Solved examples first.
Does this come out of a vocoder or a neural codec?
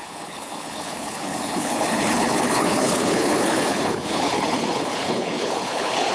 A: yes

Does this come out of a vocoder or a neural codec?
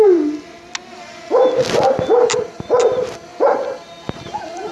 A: no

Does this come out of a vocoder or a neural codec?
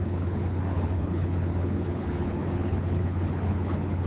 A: yes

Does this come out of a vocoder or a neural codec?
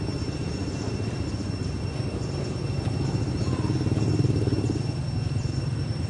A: no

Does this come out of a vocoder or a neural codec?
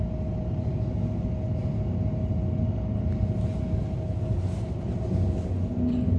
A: no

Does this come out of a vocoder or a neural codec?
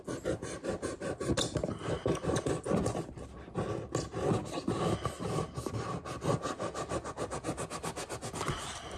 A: no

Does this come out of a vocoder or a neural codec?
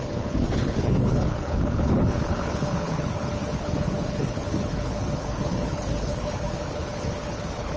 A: yes